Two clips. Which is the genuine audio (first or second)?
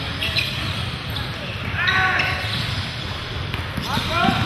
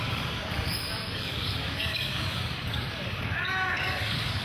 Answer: first